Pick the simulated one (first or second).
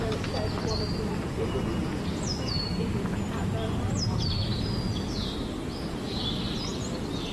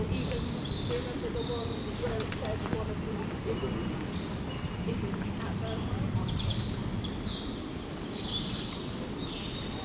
second